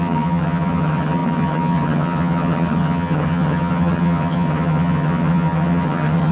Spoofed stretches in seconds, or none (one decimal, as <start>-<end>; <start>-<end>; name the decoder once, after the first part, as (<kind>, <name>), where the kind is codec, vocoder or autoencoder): 0.0-6.3 (vocoder, HiFi-GAN)